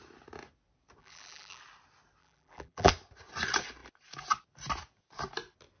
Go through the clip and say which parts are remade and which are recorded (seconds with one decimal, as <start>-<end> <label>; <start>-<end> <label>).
0.0-1.0 recorded; 1.0-1.6 remade; 1.6-2.2 recorded; 2.2-2.9 remade; 2.9-5.8 recorded